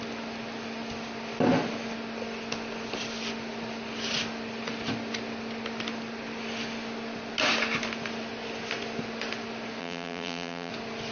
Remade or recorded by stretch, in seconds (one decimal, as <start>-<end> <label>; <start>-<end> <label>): 0.0-9.8 recorded; 9.8-10.7 remade; 10.7-11.1 recorded